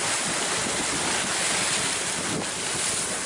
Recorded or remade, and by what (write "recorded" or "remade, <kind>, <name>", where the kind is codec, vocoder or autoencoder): recorded